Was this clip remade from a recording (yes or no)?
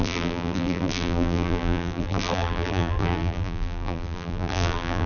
yes